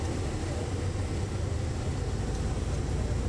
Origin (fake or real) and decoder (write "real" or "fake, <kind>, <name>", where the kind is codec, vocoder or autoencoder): real